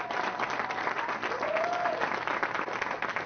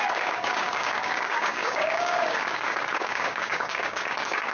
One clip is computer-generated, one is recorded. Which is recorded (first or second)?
first